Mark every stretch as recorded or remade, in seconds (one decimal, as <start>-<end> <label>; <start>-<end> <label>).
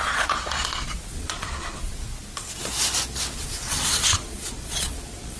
0.0-1.9 remade; 1.9-3.4 recorded; 3.4-5.4 remade